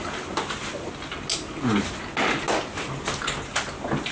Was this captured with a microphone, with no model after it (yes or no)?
yes